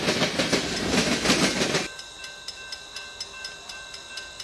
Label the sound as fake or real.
real